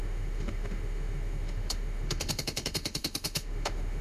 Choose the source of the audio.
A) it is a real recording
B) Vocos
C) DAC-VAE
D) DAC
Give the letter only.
C